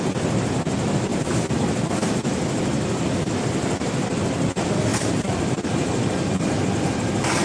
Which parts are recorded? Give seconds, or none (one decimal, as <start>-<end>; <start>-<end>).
0.0-1.1; 3.9-4.9; 5.6-7.4